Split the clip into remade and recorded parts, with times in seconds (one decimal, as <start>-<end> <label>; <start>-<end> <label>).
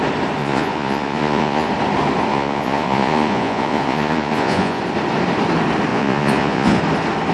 0.0-0.4 recorded; 0.4-1.7 remade; 1.7-2.3 recorded; 2.3-4.8 remade; 4.8-5.9 recorded; 5.9-6.8 remade; 6.8-7.3 recorded